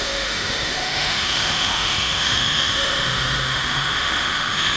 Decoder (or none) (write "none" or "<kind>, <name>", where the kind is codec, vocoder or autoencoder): autoencoder, DAC-VAE